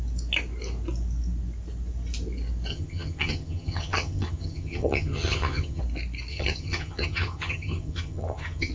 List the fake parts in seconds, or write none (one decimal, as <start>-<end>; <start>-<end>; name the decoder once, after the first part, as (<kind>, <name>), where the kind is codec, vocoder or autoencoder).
2.7-5.8 (vocoder, HiFi-GAN); 6.3-8.7